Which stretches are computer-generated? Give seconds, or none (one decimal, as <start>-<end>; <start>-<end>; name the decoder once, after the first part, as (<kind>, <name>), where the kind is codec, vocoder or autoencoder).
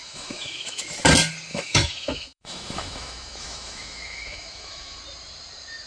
0.0-0.8 (autoencoder, DAC-VAE); 1.5-5.0